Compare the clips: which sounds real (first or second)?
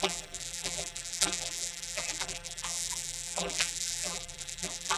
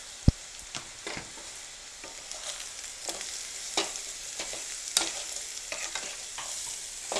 second